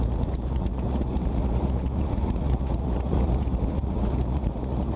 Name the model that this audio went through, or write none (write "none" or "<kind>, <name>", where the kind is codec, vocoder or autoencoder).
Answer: vocoder, Vocos